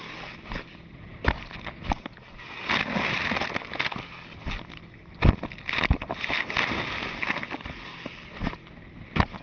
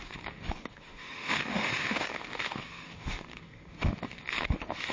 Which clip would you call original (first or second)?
first